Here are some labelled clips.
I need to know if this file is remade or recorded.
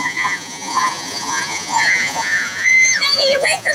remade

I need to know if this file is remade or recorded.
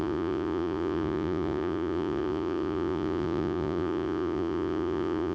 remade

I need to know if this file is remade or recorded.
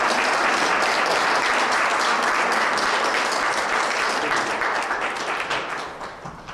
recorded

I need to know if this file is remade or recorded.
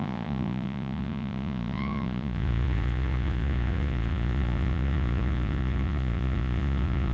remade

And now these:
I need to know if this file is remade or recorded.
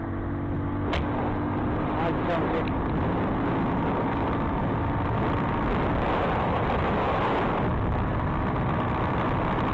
recorded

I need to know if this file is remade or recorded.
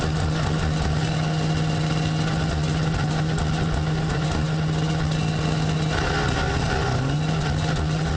recorded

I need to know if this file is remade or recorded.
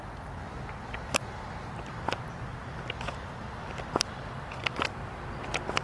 recorded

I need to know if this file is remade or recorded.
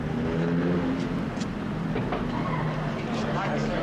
recorded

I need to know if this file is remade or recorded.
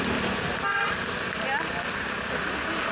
recorded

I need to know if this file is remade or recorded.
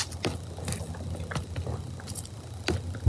recorded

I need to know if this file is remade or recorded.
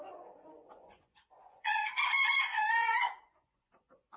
remade